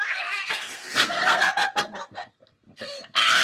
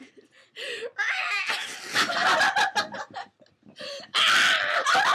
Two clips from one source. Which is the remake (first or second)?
first